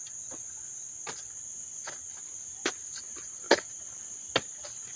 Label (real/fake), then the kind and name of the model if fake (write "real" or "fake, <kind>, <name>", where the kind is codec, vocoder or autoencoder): real